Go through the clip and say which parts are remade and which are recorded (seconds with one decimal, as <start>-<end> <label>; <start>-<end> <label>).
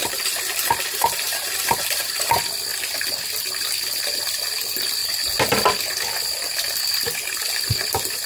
0.0-2.0 remade; 2.0-8.3 recorded